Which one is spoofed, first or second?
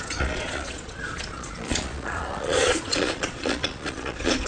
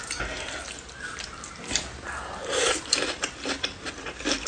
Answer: first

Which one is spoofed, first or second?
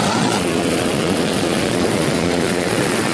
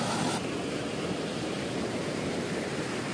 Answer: first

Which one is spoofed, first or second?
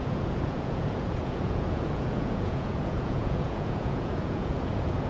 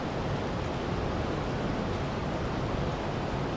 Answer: first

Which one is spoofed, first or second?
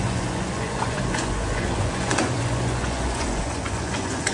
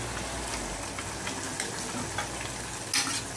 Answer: first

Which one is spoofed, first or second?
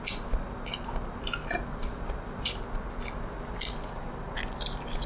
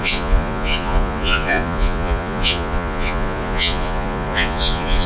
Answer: second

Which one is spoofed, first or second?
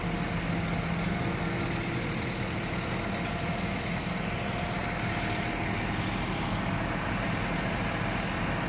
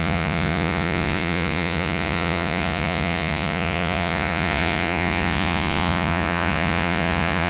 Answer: second